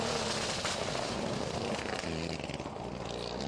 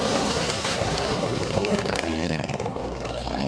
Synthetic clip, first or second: second